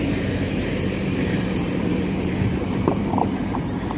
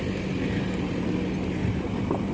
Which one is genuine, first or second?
second